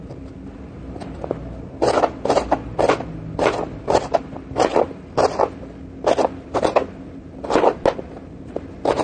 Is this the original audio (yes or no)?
yes